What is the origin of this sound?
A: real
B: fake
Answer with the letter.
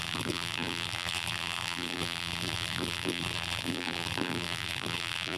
B